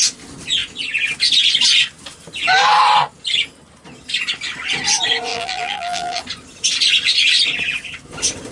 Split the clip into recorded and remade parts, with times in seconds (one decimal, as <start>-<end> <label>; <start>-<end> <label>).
0.0-5.3 recorded; 5.3-6.2 remade; 6.2-8.5 recorded

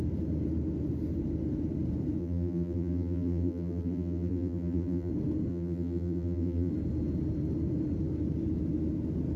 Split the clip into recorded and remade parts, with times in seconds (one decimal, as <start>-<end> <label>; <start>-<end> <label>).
0.0-2.2 recorded; 2.2-5.1 remade; 5.1-5.5 recorded; 5.5-6.7 remade; 6.7-9.4 recorded

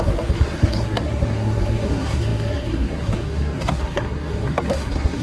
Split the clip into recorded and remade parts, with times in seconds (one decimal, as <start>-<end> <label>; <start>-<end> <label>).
0.0-5.2 remade

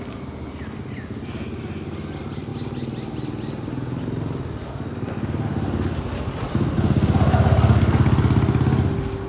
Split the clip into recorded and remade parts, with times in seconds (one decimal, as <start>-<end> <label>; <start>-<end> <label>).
0.0-9.3 recorded

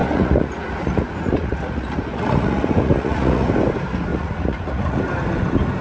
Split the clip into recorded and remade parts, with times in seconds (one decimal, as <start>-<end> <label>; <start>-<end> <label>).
0.0-3.5 remade; 3.5-4.1 recorded; 4.1-5.0 remade; 5.0-5.8 recorded

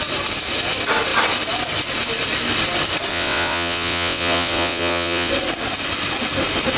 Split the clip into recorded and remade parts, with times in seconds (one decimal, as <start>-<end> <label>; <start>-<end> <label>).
0.0-3.1 recorded; 3.1-5.3 remade; 5.3-6.8 recorded

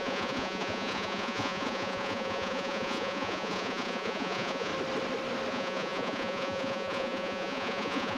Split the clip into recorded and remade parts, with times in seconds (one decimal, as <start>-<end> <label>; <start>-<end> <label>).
0.0-4.7 remade; 4.7-5.5 recorded; 5.5-8.2 remade

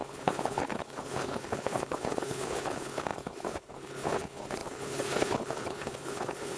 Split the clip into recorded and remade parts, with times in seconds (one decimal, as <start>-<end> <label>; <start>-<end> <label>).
0.0-6.6 remade